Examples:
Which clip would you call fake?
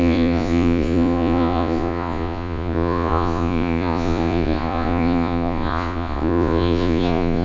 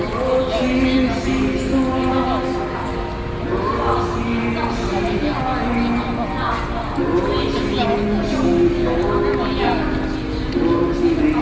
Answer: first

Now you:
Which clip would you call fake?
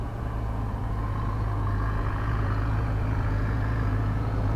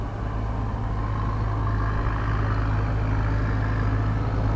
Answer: first